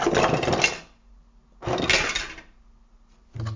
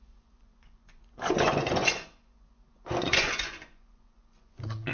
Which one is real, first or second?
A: first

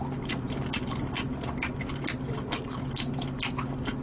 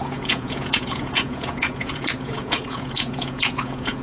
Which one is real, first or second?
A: first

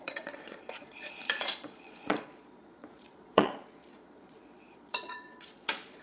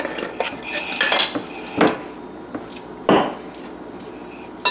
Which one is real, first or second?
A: second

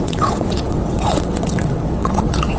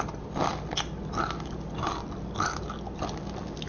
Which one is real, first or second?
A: second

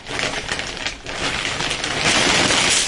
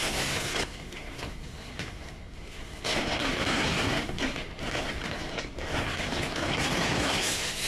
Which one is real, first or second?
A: first